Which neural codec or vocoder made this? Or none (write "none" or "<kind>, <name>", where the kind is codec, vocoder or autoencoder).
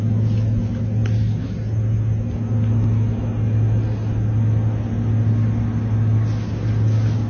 none